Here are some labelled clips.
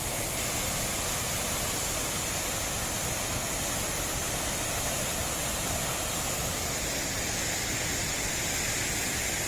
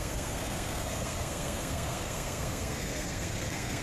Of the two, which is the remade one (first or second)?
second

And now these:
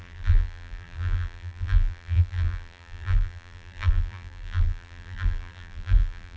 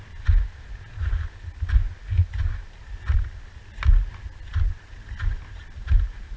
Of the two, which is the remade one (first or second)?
first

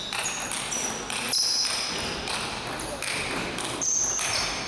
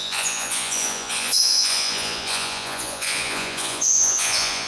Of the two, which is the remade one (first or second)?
second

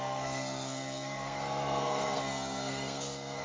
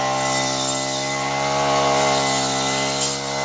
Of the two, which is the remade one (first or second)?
first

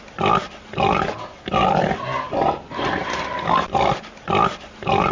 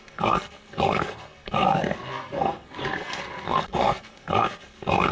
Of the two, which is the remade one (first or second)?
second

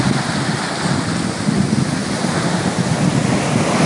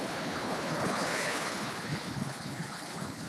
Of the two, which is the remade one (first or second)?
second